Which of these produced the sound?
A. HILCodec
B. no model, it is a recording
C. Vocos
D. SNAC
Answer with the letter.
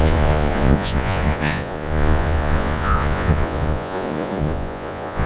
C